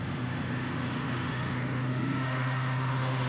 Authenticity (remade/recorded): remade